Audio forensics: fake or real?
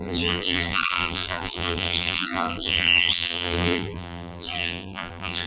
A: fake